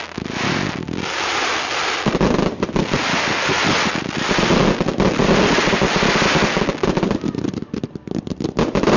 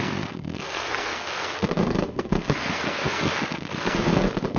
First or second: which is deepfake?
second